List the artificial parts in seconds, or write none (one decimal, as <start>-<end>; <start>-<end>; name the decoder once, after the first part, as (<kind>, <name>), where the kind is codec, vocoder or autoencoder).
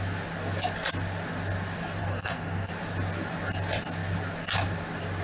2.0-2.7 (codec, SNAC)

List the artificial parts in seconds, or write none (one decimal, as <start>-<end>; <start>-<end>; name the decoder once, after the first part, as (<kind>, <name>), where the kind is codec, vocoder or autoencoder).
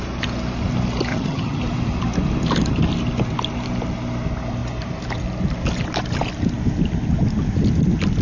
1.1-1.6 (vocoder, HiFi-GAN)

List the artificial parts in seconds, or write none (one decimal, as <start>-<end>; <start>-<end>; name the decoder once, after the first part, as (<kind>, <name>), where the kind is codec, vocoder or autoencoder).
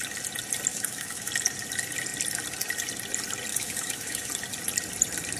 0.7-1.3 (autoencoder, DAC-VAE); 3.5-4.3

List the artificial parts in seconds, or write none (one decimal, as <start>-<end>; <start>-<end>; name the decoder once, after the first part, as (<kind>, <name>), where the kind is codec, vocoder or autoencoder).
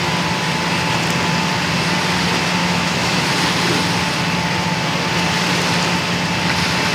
2.6-3.3 (autoencoder, DAC-VAE)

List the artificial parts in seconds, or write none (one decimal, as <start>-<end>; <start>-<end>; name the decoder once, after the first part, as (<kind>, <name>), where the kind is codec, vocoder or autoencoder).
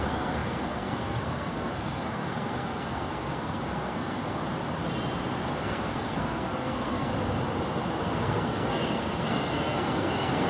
0.0-4.4 (codec, SNAC); 5.5-7.1; 8.0-10.5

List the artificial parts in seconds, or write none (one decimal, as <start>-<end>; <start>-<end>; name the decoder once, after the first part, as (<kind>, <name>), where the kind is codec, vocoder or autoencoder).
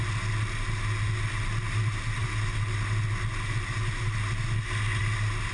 none